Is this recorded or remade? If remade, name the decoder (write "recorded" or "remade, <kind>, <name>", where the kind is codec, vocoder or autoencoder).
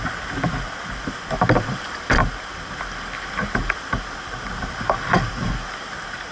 recorded